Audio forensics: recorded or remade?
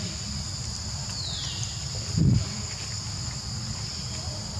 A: recorded